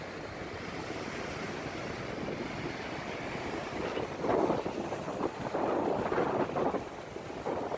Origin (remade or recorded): recorded